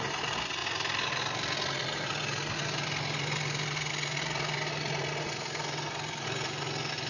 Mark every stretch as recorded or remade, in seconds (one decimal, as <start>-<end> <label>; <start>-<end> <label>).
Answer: 0.0-7.1 recorded